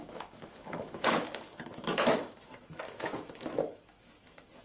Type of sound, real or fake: fake